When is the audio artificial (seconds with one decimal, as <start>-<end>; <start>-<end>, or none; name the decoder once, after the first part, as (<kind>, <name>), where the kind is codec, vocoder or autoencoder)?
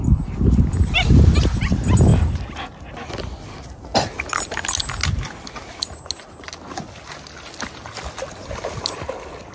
none